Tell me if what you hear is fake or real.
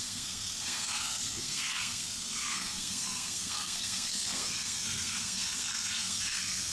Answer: fake